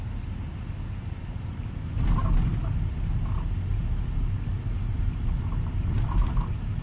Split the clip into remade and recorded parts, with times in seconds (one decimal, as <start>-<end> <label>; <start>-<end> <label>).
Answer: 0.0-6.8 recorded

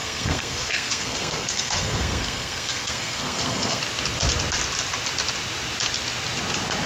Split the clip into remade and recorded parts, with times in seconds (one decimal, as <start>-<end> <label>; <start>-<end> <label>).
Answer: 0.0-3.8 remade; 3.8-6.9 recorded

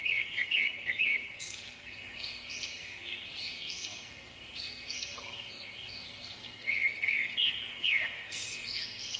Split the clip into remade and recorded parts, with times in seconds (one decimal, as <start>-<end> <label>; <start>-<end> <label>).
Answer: 0.0-9.2 remade